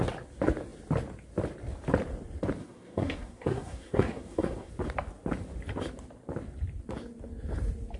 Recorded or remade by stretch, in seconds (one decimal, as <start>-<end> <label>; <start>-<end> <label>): 0.0-2.6 recorded; 2.6-4.7 remade; 4.7-8.0 recorded